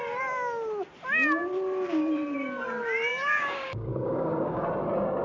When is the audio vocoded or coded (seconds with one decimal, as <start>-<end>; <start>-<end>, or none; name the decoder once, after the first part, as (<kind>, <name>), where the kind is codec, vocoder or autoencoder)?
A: 3.1-4.6 (codec, DAC)